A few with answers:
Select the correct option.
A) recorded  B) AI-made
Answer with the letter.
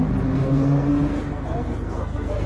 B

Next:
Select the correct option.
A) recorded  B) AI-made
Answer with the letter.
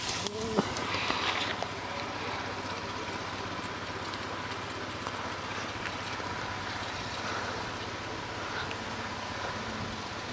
A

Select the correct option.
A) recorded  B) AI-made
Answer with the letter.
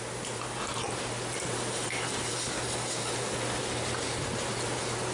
A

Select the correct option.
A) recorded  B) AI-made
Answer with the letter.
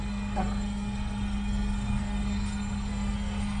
B